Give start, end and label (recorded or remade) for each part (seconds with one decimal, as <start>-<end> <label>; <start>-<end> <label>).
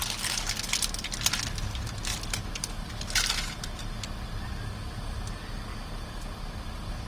0.0-7.1 recorded